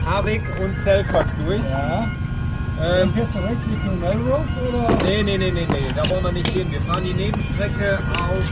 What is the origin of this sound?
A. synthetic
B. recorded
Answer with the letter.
B